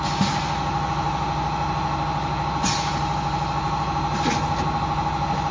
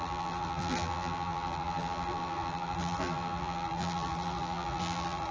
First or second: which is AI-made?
second